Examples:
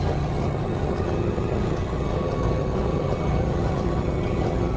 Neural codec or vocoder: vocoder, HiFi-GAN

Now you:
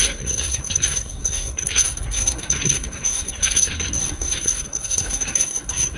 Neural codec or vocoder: codec, SNAC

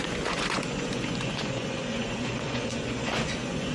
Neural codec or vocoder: vocoder, Vocos